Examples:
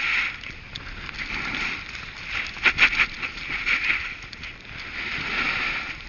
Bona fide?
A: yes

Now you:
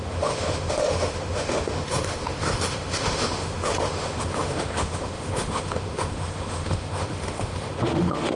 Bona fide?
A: no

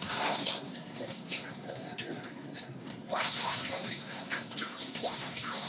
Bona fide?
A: no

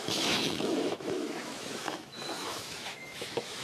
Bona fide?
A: no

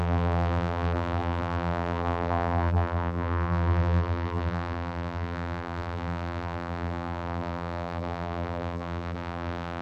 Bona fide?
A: no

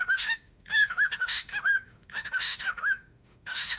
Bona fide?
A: no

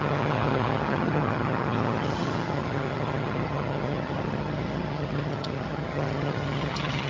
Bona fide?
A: no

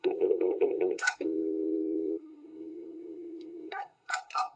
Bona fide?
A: no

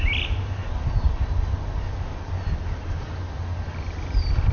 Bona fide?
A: yes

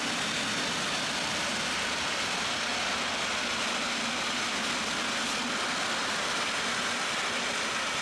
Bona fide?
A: yes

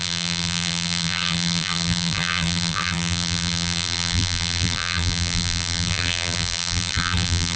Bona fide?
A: no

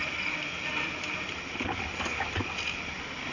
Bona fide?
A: yes